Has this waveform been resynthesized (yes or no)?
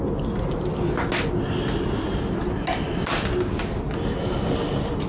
no